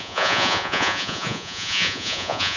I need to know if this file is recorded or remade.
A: remade